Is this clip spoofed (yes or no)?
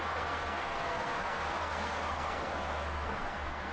yes